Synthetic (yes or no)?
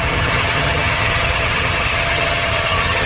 yes